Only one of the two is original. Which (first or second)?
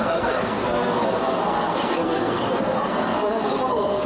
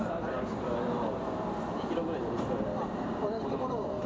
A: second